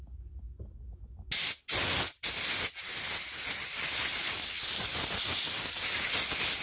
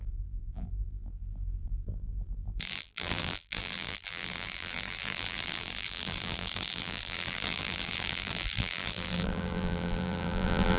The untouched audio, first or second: first